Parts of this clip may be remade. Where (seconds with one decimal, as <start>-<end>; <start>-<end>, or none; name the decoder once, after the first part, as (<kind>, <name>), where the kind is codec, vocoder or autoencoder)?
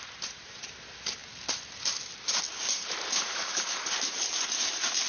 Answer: 0.0-1.2 (vocoder, BigVGAN v2); 2.6-5.1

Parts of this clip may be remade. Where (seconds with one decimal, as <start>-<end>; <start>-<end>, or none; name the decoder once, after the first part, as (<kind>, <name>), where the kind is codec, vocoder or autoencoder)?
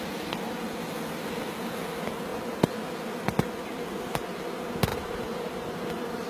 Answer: 4.9-6.3 (vocoder, BigVGAN v2)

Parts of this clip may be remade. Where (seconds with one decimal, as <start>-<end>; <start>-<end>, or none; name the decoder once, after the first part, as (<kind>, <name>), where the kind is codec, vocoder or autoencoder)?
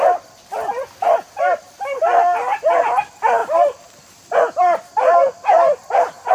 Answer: 3.4-6.3 (vocoder, BigVGAN v2)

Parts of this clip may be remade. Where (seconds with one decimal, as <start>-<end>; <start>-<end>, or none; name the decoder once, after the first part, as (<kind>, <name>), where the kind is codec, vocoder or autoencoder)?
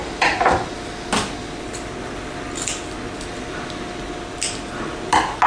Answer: 0.0-0.7 (vocoder, BigVGAN v2)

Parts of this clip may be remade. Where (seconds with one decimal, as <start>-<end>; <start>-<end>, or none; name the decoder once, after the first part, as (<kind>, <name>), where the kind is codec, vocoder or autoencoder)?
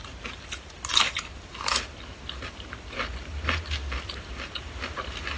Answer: 3.8-4.3 (vocoder, BigVGAN v2)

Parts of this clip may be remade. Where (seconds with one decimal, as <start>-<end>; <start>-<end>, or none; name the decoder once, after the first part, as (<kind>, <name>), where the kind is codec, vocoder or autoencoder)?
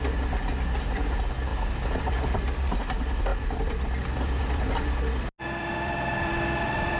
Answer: 3.3-4.6 (vocoder, BigVGAN v2); 5.6-7.0